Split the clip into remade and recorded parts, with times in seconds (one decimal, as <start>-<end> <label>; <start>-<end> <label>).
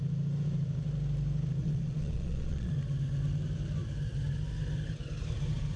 0.0-1.6 recorded; 1.6-2.7 remade; 2.7-5.8 recorded